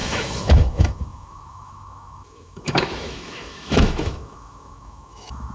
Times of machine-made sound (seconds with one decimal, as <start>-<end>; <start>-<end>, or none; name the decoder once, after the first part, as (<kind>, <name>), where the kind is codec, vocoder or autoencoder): 0.0-5.5 (autoencoder, DAC-VAE)